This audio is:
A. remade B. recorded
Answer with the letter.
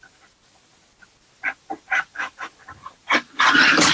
B